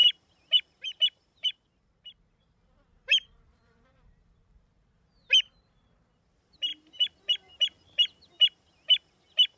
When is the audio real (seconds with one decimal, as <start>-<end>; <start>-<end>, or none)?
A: 5.0-9.6